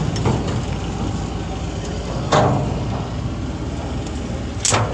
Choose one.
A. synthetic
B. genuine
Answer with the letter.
B